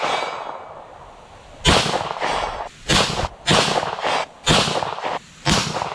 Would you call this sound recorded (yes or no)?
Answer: yes